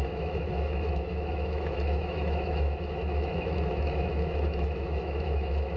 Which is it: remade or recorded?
remade